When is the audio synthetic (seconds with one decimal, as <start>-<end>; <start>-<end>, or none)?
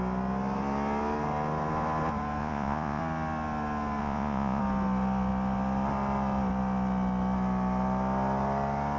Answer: 2.4-3.0; 4.0-4.6